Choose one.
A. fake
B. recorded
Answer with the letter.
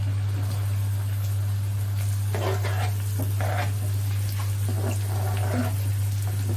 B